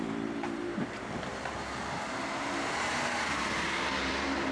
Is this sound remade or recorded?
remade